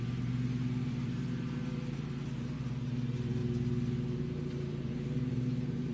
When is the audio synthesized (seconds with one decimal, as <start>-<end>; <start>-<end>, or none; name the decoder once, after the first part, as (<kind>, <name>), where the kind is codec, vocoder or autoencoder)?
0.0-3.4 (vocoder, BigVGAN v2); 4.2-5.9